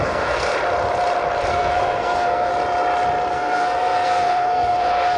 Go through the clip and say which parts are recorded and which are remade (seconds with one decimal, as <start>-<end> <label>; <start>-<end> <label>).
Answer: 0.0-0.5 remade; 0.5-1.5 recorded; 1.5-2.5 remade; 2.5-3.3 recorded; 3.3-5.2 remade